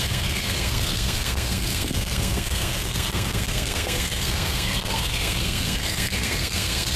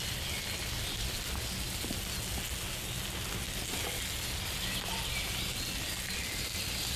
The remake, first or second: first